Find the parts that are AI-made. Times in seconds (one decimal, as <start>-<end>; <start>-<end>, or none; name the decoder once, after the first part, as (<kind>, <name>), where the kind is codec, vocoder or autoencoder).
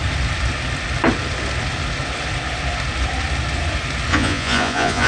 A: 4.1-5.1 (vocoder, Vocos)